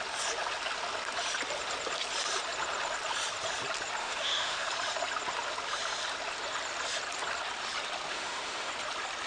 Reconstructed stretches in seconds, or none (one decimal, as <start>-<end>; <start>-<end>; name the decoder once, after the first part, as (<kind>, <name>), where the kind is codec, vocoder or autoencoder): 4.0-4.7 (autoencoder, DAC-VAE); 8.1-8.7